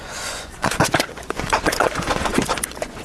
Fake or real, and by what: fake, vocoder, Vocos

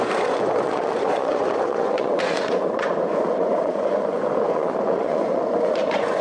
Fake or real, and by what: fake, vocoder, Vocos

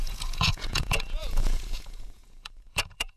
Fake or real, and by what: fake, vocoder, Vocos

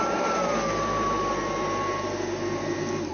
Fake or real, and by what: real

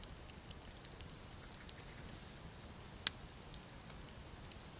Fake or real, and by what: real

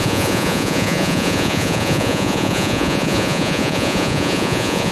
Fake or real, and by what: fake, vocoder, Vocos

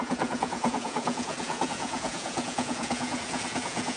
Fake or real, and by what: fake, vocoder, Vocos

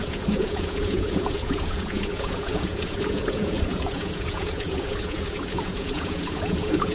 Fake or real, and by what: fake, vocoder, Vocos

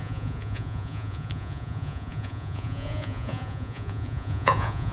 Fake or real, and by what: fake, vocoder, Vocos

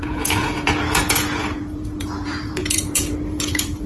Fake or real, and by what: fake, vocoder, Vocos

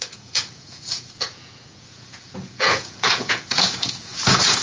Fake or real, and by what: fake, vocoder, Vocos